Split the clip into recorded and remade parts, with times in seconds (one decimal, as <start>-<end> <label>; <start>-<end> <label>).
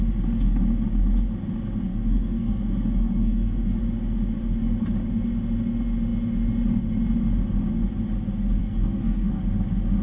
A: 0.0-1.9 recorded; 1.9-3.8 remade; 3.8-8.6 recorded; 8.6-9.4 remade; 9.4-10.0 recorded